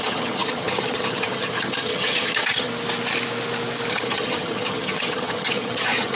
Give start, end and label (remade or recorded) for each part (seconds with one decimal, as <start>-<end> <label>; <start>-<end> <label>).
0.0-2.7 remade; 2.7-3.9 recorded; 3.9-6.1 remade

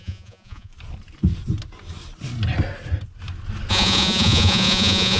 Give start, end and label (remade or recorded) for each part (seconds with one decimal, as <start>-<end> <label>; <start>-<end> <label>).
0.0-0.7 remade; 0.7-3.7 recorded; 3.7-5.2 remade